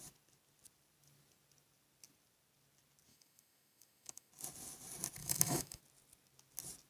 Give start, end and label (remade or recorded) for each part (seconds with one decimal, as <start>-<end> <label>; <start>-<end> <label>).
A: 0.0-3.1 recorded; 3.1-4.3 remade; 4.3-5.2 recorded; 5.2-5.8 remade; 5.8-6.9 recorded